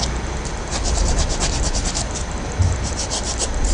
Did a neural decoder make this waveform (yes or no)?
no